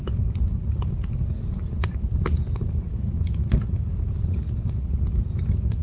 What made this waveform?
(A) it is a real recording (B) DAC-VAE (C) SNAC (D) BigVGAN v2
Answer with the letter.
A